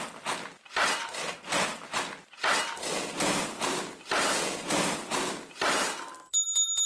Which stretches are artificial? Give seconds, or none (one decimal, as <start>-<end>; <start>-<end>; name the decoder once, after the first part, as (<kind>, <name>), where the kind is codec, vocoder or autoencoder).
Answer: none